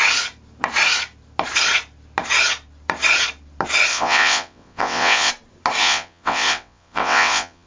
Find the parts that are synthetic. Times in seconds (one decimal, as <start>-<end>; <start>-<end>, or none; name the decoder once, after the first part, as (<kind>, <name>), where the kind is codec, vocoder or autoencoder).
3.9-5.3 (vocoder, WaveNeXt); 5.8-7.7